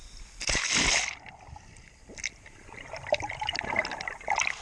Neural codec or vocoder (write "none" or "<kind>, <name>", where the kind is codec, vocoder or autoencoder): none